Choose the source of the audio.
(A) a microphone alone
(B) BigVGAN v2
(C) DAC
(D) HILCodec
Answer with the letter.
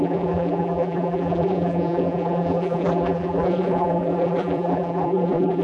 B